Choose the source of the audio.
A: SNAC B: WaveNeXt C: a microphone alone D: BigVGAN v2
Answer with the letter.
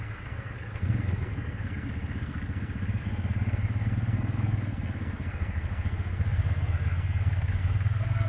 A